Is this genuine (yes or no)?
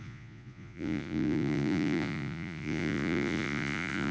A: no